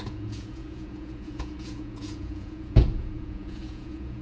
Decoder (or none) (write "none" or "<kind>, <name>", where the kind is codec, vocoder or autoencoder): vocoder, Vocos